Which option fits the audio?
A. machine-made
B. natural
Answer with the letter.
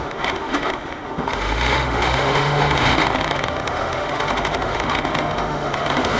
A